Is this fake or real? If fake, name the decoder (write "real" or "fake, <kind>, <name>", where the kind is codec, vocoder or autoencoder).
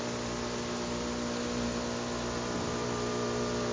real